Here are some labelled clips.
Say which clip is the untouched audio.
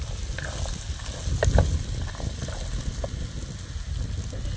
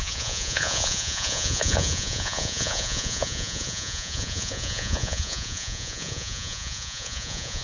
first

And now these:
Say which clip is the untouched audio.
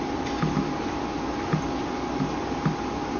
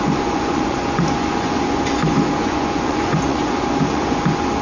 first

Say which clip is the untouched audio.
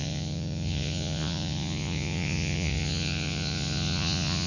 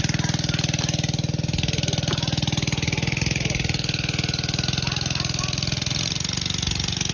second